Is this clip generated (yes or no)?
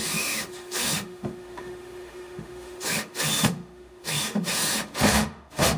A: yes